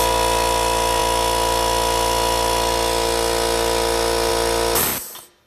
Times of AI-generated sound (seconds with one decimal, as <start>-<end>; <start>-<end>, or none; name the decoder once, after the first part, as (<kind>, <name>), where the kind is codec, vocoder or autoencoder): none